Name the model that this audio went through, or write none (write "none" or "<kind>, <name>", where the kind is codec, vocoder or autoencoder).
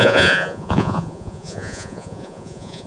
vocoder, Vocos